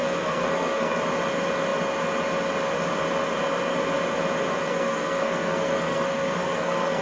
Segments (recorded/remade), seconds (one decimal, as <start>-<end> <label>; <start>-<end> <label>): 0.0-1.0 remade; 1.0-4.7 recorded; 4.7-7.0 remade